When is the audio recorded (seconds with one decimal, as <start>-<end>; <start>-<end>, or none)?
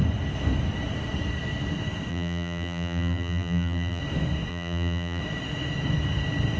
0.0-2.1; 4.0-4.5; 5.2-6.6